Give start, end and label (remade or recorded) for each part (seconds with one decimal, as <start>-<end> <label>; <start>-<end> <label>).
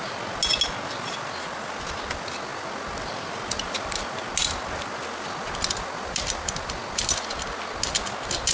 0.0-8.5 recorded